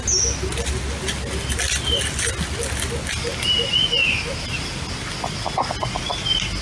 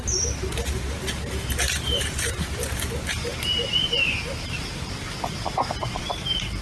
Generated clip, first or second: second